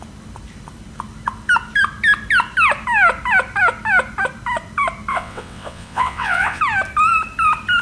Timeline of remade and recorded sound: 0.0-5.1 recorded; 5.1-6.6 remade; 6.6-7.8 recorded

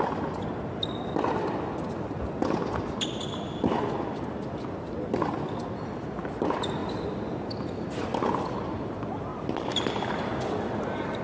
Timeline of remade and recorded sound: 0.0-11.2 recorded

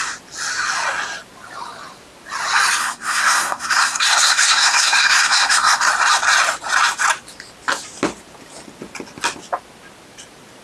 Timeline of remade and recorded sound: 0.0-2.8 recorded; 2.8-5.9 remade; 5.9-10.6 recorded

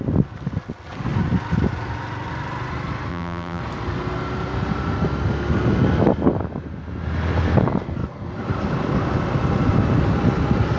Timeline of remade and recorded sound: 0.0-3.1 recorded; 3.1-3.6 remade; 3.6-10.8 recorded

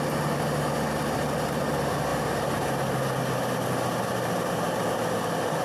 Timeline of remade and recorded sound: 0.0-5.6 recorded

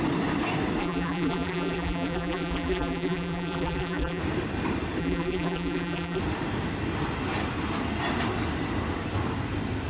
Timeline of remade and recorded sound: 0.0-0.8 recorded; 0.8-4.2 remade; 4.2-5.0 recorded; 5.0-6.2 remade; 6.2-9.9 recorded

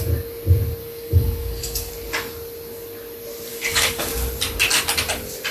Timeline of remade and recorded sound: 0.0-0.8 recorded; 0.8-1.9 remade; 1.9-3.5 recorded; 3.5-4.1 remade; 4.1-5.5 recorded

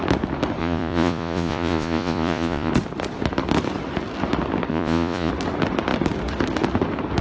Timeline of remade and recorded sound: 0.0-0.6 recorded; 0.6-2.7 remade; 2.7-4.7 recorded; 4.7-5.3 remade; 5.3-7.2 recorded